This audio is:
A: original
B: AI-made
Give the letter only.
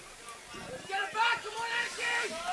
B